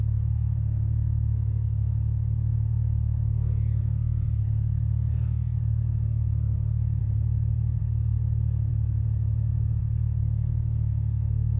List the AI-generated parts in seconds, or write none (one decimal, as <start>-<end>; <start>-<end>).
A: 0.0-7.0; 7.8-8.7; 9.8-11.6